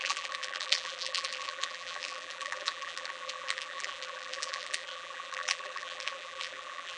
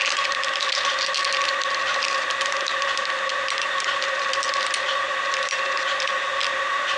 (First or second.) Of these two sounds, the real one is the second